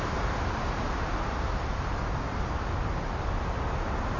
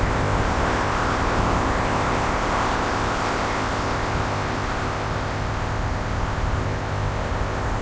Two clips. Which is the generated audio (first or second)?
second